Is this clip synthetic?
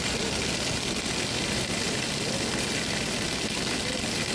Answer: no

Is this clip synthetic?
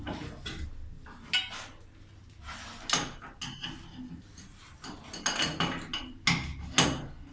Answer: no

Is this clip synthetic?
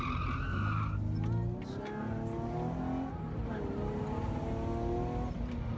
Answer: no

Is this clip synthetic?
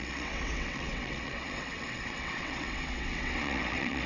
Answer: yes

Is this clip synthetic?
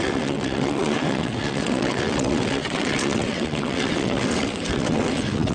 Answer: yes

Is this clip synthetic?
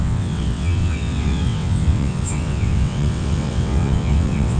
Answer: yes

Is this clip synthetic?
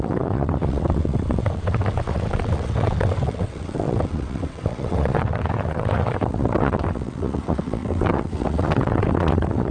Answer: yes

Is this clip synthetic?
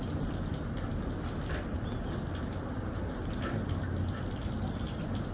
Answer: no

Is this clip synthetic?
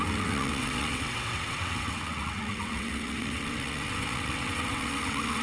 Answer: yes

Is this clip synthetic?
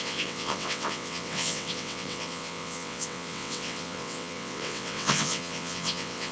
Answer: yes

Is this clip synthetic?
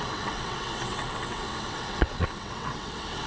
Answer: yes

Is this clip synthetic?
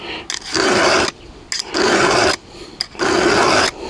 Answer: no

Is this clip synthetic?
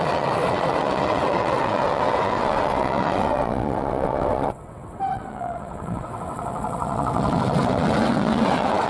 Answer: yes